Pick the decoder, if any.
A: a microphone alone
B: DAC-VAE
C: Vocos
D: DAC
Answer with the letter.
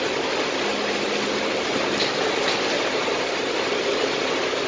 A